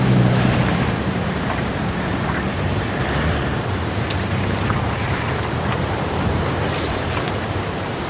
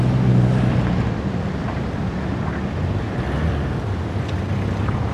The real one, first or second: second